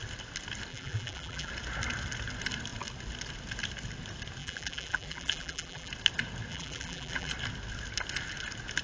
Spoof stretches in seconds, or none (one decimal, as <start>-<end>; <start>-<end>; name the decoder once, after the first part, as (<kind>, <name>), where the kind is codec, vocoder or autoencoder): 0.7-1.5 (vocoder, BigVGAN v2); 4.4-5.9; 6.5-7.3